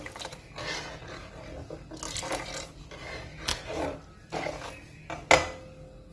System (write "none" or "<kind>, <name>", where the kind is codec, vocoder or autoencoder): none